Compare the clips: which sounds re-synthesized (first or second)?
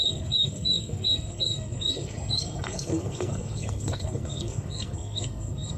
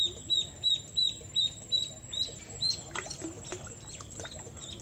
first